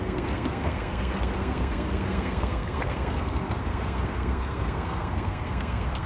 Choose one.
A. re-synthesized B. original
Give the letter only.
A